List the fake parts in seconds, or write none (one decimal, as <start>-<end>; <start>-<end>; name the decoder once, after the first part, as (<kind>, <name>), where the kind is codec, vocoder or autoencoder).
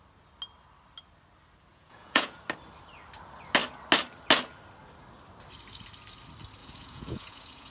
1.7-2.4 (vocoder, Vocos); 6.6-7.7